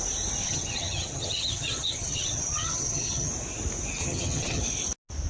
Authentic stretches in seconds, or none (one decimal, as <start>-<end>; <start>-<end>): 0.0-0.4; 3.3-4.0; 4.6-5.3

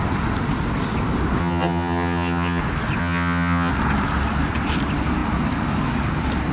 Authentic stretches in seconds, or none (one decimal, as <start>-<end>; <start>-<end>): 0.0-1.4; 2.6-3.0; 3.7-6.5

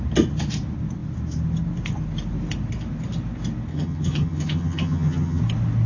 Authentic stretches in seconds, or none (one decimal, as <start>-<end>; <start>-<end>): 0.0-3.7; 5.4-5.9

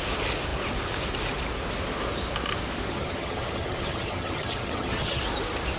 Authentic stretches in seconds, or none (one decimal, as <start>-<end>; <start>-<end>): 0.0-2.9; 5.2-5.8

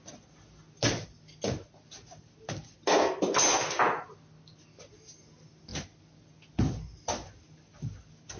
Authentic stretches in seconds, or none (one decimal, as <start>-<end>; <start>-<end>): 0.0-8.4